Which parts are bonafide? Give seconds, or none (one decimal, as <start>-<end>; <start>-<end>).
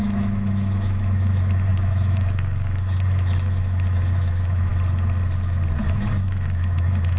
4.7-5.8